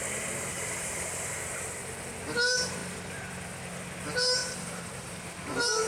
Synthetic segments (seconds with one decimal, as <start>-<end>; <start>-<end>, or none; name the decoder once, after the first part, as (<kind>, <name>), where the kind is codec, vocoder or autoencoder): 0.5-1.4 (vocoder, BigVGAN v2); 4.4-5.2